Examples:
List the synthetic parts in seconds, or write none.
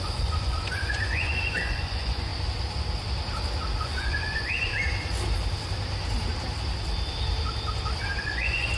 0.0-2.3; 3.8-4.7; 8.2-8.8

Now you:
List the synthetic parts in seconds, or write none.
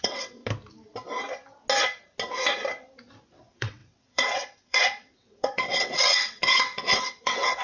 0.0-0.4; 3.3-7.6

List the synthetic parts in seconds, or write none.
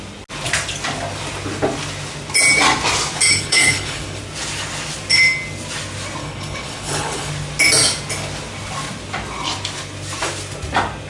3.3-4.2; 6.2-7.3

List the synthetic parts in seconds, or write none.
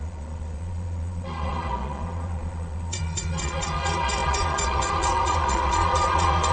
0.0-6.5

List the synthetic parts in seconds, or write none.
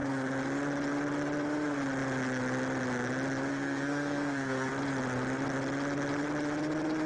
3.5-4.7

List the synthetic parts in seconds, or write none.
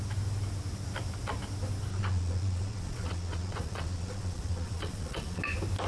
1.9-5.4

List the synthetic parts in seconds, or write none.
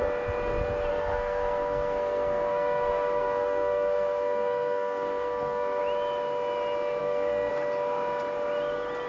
0.9-5.8; 7.0-7.5